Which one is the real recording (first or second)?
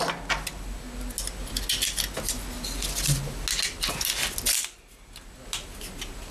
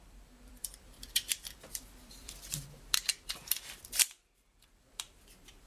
first